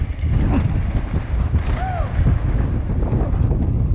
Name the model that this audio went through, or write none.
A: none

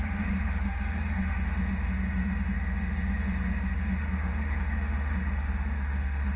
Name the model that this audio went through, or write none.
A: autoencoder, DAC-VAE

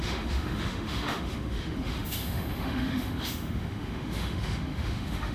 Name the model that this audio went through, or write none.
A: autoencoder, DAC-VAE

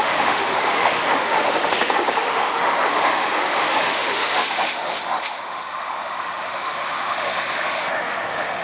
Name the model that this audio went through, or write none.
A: autoencoder, DAC-VAE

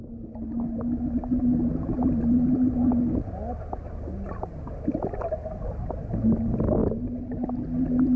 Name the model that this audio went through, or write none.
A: none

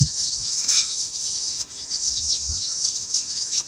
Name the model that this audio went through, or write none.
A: autoencoder, DAC-VAE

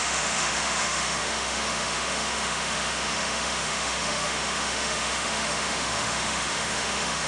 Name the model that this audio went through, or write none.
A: autoencoder, DAC-VAE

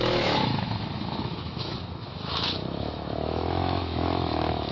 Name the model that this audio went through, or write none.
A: autoencoder, DAC-VAE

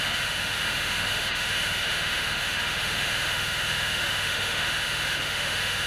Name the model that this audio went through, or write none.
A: autoencoder, DAC-VAE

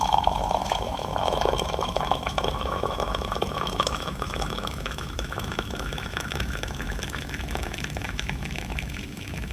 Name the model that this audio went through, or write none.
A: autoencoder, DAC-VAE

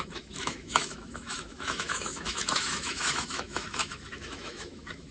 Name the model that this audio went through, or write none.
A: autoencoder, DAC-VAE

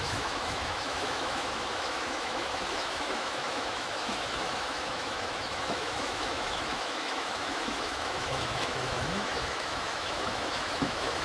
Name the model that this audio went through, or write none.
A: autoencoder, DAC-VAE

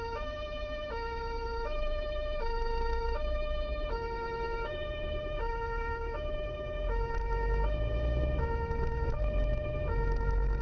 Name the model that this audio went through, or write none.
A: autoencoder, DAC-VAE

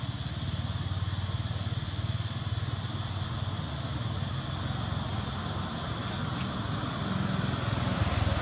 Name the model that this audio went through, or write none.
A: none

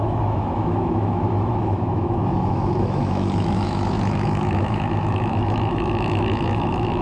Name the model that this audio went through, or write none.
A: autoencoder, DAC-VAE